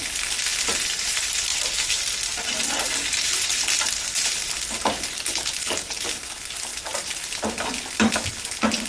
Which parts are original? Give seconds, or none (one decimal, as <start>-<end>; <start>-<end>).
1.5-6.1